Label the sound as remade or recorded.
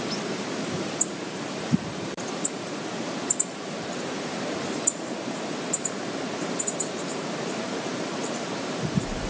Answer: remade